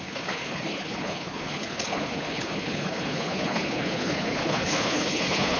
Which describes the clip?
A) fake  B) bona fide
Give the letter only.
A